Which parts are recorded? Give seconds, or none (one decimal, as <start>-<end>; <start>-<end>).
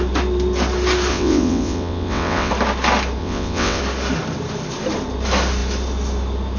0.0-1.1; 2.5-3.2; 3.8-6.6